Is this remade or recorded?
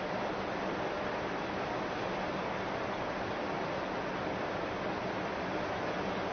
recorded